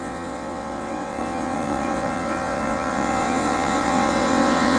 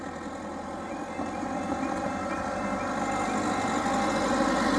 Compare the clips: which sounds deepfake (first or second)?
first